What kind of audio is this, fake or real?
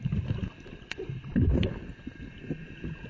real